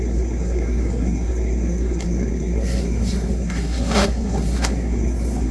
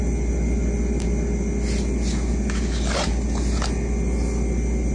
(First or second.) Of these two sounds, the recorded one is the second